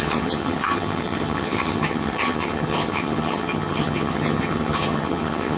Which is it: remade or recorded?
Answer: remade